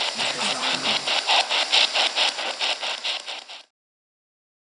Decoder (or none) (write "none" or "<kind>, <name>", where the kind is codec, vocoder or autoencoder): none